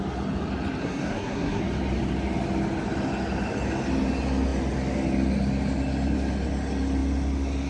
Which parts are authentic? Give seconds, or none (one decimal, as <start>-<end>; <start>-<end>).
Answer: 0.0-0.8; 1.6-7.7